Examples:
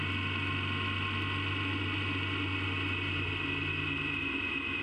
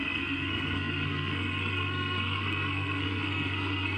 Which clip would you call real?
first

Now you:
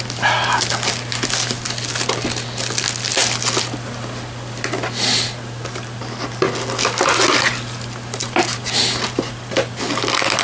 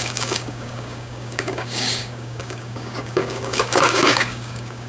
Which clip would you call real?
first